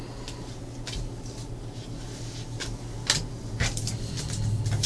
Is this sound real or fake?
real